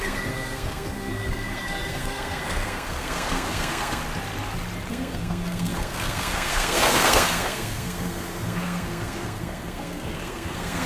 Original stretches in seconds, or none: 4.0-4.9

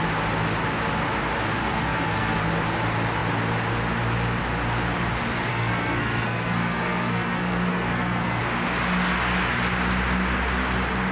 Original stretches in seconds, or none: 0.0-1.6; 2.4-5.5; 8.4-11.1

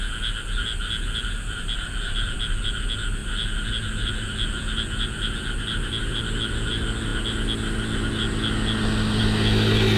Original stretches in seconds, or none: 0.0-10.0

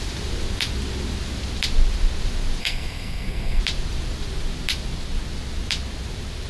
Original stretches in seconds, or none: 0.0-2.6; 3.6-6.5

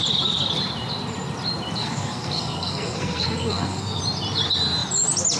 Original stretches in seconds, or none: 0.0-1.8; 4.0-5.4

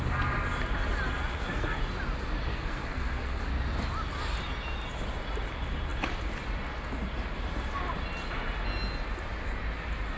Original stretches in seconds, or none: 0.0-1.3; 1.8-2.5; 3.4-10.2